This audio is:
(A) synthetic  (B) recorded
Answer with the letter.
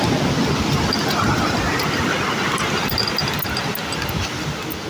B